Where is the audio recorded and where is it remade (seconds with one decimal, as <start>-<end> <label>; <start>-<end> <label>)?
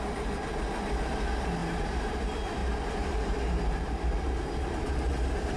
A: 0.0-1.6 recorded; 1.6-2.2 remade; 2.2-2.6 recorded; 2.6-5.6 remade